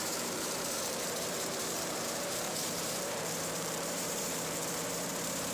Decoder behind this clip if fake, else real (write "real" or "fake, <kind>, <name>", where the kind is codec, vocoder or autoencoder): fake, vocoder, BigVGAN v2